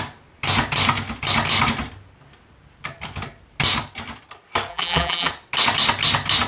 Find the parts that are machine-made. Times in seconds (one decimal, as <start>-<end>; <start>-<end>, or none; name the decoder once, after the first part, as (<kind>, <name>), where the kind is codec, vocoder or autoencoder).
4.7-5.3 (vocoder, BigVGAN v2)